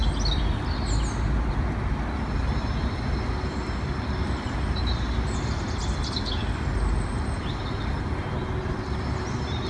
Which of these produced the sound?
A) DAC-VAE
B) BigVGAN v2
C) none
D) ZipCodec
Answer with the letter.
C